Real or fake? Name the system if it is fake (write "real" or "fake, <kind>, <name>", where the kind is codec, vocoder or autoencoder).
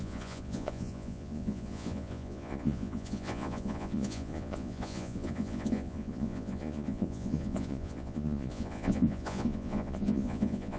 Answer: fake, vocoder, Vocos